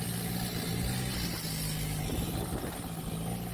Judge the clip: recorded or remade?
recorded